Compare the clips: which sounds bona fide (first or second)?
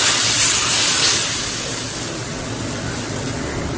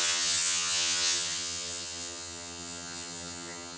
first